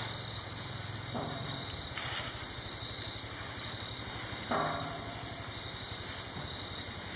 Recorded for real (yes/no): yes